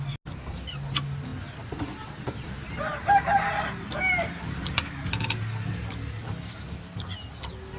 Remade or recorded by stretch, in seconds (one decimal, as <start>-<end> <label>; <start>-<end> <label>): 0.0-7.8 recorded